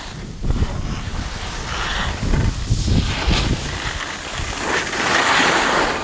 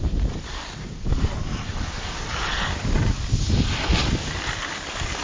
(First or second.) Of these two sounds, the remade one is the second